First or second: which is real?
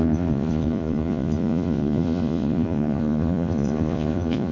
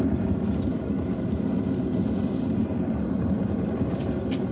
second